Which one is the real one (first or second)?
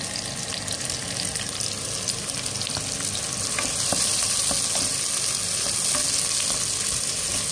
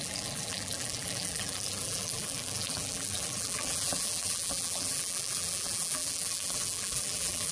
first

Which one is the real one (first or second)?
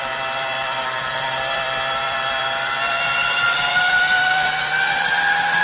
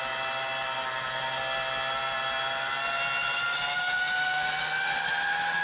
second